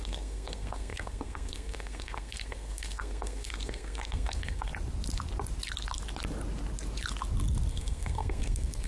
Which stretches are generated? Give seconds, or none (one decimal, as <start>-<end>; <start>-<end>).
0.0-4.7; 7.7-8.9